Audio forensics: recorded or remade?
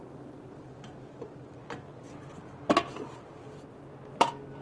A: recorded